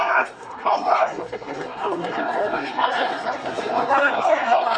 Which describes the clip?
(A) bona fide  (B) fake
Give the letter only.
B